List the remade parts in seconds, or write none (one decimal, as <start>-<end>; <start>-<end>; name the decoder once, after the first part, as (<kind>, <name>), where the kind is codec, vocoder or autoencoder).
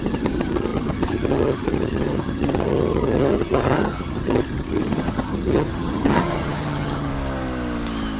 0.0-7.1 (vocoder, HiFi-GAN)